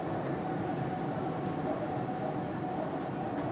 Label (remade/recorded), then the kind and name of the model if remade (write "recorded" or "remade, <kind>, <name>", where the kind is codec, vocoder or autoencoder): recorded